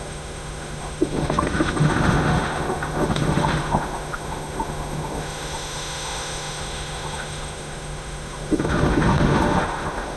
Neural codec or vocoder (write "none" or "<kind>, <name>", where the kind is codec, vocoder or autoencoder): autoencoder, DAC-VAE